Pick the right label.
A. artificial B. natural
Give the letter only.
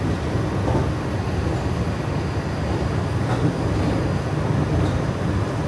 B